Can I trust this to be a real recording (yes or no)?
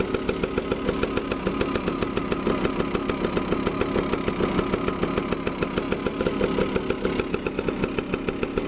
yes